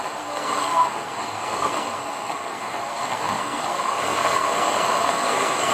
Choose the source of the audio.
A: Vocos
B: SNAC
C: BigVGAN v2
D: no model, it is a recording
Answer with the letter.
B